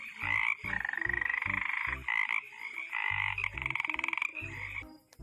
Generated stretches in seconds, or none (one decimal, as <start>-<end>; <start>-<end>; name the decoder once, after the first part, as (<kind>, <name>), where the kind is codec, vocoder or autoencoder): 2.2-3.3 (vocoder, BigVGAN v2); 4.3-5.2